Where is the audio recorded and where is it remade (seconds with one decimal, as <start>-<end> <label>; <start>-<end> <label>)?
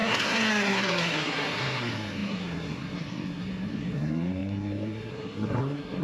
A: 0.0-6.0 remade